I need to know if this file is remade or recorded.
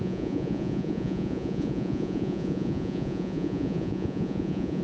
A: remade